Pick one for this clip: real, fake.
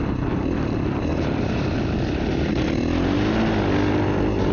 real